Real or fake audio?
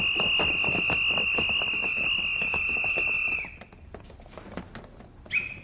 real